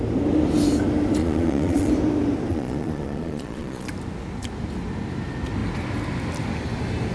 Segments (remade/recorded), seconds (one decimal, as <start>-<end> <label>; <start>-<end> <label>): 0.0-1.2 recorded; 1.2-1.9 remade; 1.9-2.5 recorded; 2.5-3.9 remade; 3.9-7.1 recorded